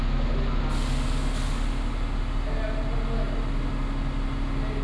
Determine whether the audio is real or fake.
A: real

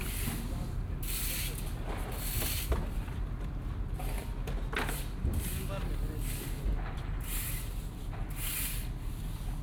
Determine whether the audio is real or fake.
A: real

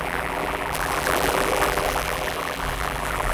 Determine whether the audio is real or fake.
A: fake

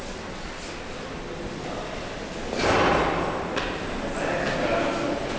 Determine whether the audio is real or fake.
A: real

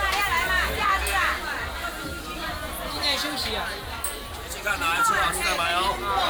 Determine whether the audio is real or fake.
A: real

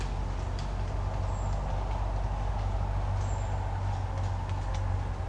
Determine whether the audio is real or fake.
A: real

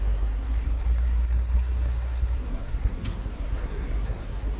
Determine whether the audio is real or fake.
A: fake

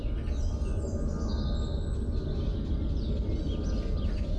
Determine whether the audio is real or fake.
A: real